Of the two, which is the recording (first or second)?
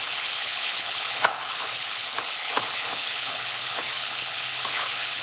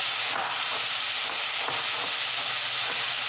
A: second